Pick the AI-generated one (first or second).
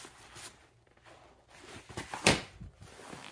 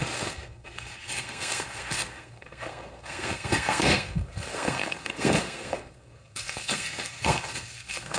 second